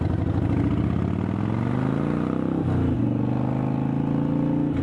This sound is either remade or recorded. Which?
recorded